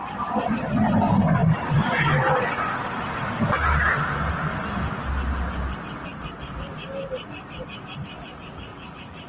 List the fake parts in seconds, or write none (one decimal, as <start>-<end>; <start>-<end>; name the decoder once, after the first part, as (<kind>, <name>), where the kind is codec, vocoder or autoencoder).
8.7-9.3 (vocoder, BigVGAN v2)